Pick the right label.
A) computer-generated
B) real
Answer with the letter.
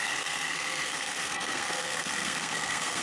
A